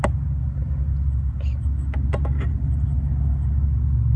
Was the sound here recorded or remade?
recorded